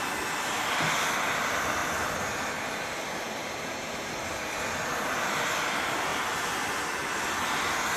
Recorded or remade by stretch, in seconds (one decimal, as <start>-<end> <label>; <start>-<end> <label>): 0.0-1.8 recorded; 1.8-5.4 remade; 5.4-6.1 recorded; 6.1-7.2 remade; 7.2-8.0 recorded